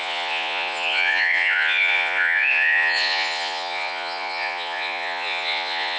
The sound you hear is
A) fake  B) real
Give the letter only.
A